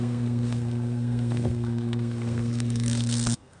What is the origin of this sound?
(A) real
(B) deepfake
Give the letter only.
B